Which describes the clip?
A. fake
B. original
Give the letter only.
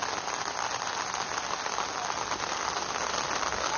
B